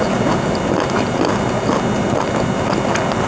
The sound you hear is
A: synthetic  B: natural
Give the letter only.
B